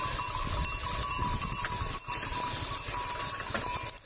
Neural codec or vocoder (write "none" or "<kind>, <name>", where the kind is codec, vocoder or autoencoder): none